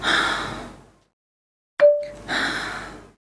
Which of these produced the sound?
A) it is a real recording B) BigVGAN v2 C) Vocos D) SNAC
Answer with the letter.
A